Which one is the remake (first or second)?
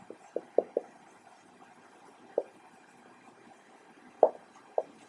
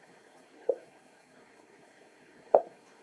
second